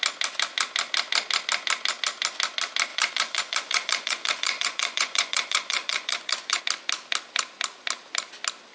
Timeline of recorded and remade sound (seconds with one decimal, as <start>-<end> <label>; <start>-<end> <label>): 0.0-2.9 recorded; 2.9-6.6 remade; 6.6-8.7 recorded